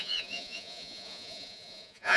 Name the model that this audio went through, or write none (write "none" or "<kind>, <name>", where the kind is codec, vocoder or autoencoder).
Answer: vocoder, Vocos